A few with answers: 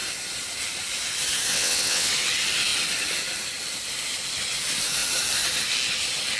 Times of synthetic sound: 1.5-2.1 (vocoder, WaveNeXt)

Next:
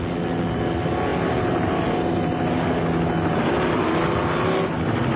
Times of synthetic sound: none

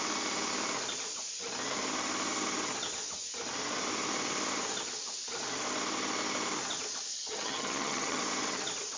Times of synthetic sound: 7.1-8.2 (vocoder, HiFi-GAN)

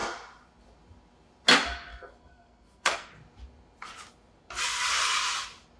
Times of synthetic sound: 1.9-3.1 (codec, SNAC)

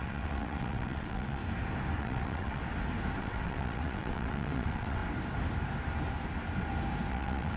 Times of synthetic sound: 0.0-1.4 (vocoder, WaveNeXt); 2.0-2.6; 3.2-5.0; 7.1-7.6